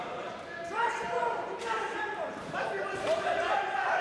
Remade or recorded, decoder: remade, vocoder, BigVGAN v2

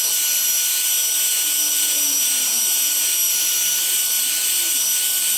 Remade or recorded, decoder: recorded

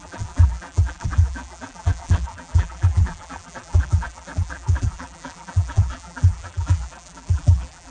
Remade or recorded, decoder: remade, vocoder, BigVGAN v2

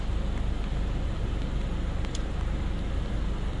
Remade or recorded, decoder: recorded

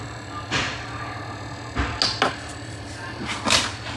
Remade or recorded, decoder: recorded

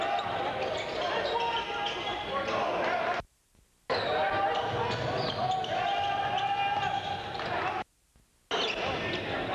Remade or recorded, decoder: recorded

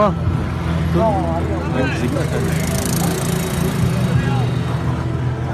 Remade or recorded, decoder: recorded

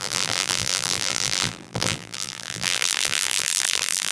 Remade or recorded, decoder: remade, vocoder, BigVGAN v2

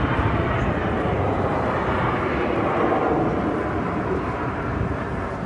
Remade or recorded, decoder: remade, vocoder, BigVGAN v2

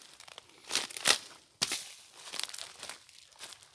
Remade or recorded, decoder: recorded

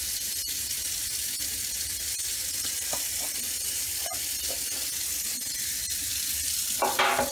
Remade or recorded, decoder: recorded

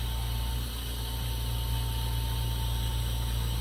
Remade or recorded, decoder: recorded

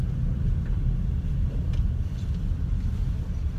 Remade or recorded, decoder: recorded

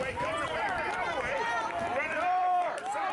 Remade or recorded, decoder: remade, vocoder, BigVGAN v2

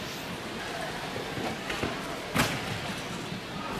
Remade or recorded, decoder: recorded